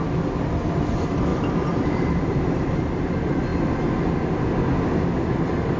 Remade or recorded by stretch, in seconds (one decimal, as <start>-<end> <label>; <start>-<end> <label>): 0.0-1.3 recorded; 1.3-2.6 remade; 2.6-5.8 recorded